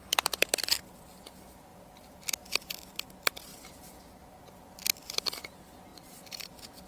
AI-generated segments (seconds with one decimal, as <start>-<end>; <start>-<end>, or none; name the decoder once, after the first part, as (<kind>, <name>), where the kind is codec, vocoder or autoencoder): 1.7-2.6 (vocoder, BigVGAN v2); 3.5-4.4; 5.9-6.5